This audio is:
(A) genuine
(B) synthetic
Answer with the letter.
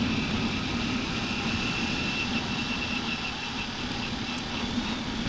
A